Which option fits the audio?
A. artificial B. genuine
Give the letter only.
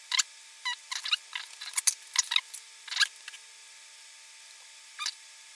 B